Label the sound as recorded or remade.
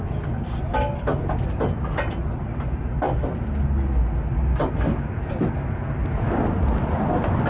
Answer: recorded